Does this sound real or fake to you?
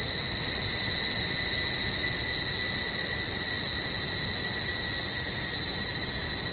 real